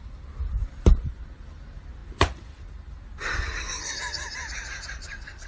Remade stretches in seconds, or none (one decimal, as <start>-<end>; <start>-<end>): 0.6-1.1; 2.0-2.7